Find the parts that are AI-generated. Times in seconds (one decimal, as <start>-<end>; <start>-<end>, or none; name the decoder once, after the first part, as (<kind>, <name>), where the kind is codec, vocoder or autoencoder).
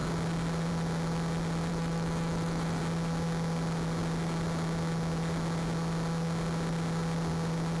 1.7-2.8 (autoencoder, DAC-VAE)